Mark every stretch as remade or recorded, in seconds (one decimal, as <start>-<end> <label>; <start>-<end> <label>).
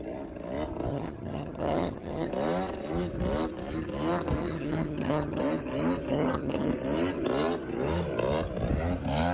0.0-0.9 recorded; 0.9-2.3 remade; 2.3-4.4 recorded; 4.4-5.4 remade; 5.4-6.1 recorded; 6.1-6.7 remade; 6.7-9.3 recorded